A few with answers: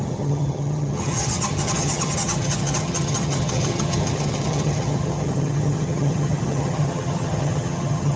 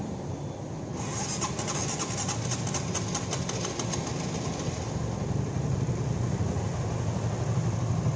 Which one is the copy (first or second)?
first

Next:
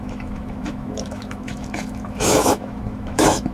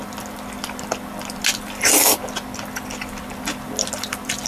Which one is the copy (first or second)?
first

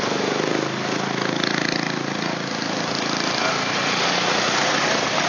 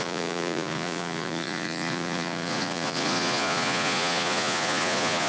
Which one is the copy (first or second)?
second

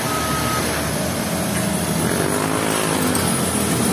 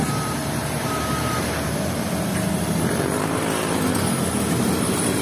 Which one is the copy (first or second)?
second